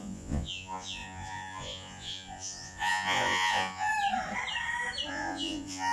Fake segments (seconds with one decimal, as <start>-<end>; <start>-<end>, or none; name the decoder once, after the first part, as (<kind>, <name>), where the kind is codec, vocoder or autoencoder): 0.0-3.9 (vocoder, Vocos); 5.1-5.9